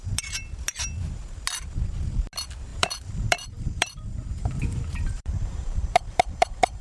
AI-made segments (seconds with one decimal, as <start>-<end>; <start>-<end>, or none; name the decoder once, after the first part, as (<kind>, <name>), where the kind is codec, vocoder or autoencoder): 2.7-6.8 (vocoder, BigVGAN v2)